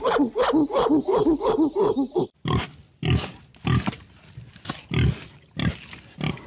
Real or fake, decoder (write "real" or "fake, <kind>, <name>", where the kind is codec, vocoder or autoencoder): real